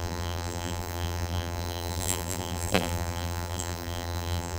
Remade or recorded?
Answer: remade